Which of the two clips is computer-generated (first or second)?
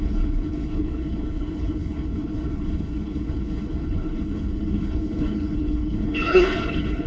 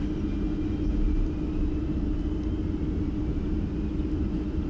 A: first